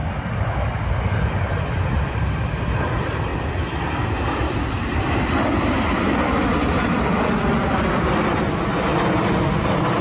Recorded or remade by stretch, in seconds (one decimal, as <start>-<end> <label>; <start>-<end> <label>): 0.0-0.8 recorded; 0.8-3.3 remade; 3.3-7.2 recorded; 7.2-8.9 remade; 8.9-10.0 recorded